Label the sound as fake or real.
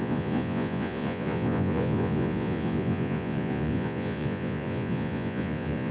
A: fake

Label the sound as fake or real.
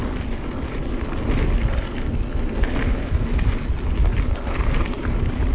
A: real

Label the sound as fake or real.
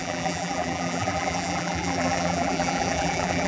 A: fake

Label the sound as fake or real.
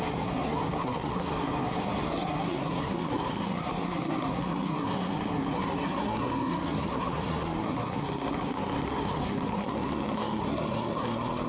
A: fake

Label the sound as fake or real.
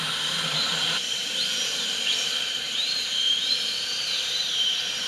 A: fake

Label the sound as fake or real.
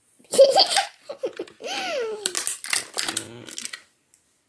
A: real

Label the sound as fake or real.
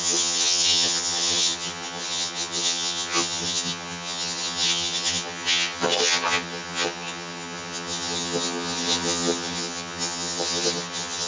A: fake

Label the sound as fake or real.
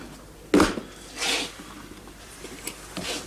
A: real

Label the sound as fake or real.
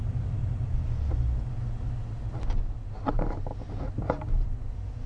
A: real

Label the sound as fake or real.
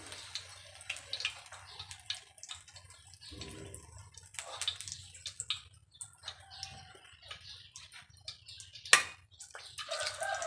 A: real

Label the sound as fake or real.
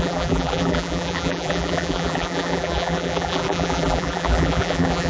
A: fake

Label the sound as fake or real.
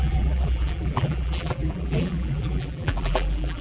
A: fake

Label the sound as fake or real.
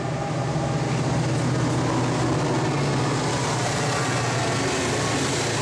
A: real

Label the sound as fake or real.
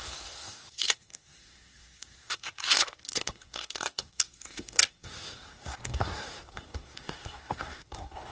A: fake